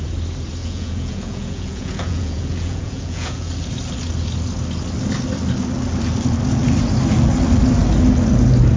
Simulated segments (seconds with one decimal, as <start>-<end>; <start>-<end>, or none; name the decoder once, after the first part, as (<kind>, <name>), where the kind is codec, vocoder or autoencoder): 0.6-3.5 (vocoder, Vocos)